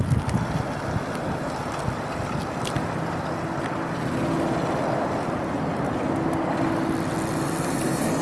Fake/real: real